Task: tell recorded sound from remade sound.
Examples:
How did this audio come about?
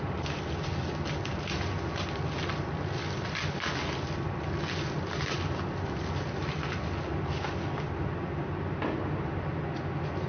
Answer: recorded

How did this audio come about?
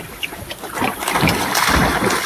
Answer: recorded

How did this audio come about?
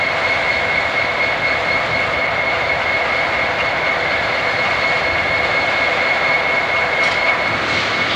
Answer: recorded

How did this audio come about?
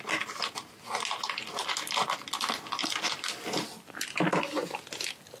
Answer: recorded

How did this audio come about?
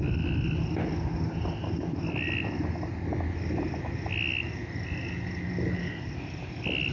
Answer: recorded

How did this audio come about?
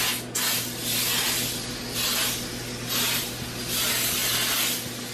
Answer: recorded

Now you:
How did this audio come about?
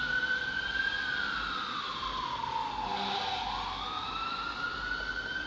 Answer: recorded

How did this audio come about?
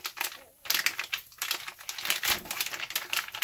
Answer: recorded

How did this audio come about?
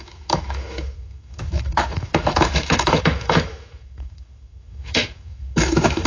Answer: remade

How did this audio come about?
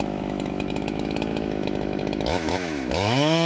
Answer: remade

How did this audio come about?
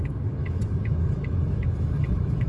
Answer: remade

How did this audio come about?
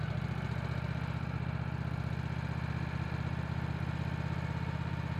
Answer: recorded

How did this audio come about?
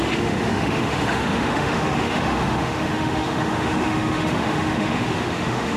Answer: remade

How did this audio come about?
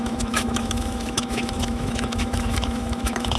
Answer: remade